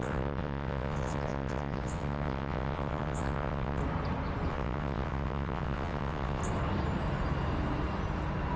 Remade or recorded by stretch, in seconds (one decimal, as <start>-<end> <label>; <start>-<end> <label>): 0.0-3.8 remade; 3.8-4.5 recorded; 4.5-6.4 remade; 6.4-8.6 recorded